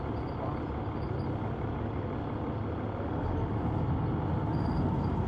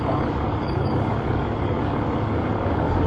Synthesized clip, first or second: second